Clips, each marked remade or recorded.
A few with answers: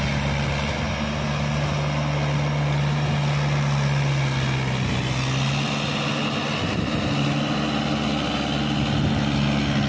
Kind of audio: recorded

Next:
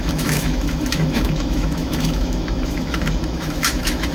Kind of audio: remade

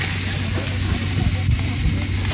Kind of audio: recorded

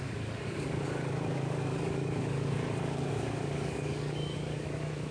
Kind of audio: remade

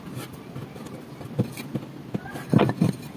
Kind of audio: recorded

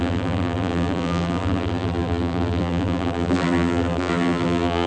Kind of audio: remade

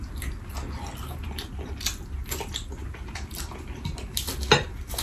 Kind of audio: recorded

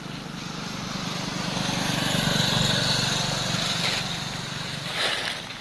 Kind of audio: recorded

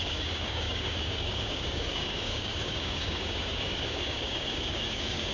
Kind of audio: remade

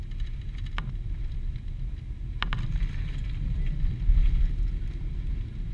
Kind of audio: recorded